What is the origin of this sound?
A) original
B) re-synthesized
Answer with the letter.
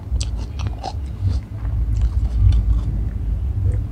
A